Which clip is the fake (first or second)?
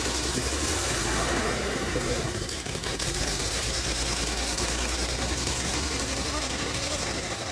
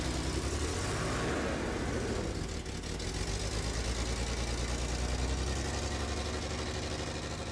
first